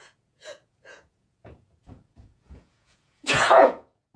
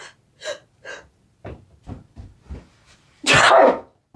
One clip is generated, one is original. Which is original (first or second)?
second